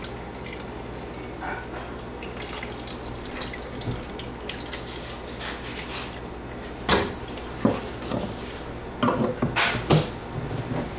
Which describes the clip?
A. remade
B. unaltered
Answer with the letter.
B